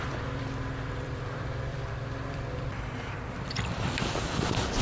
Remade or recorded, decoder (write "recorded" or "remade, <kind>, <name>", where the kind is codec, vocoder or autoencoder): remade, vocoder, BigVGAN v2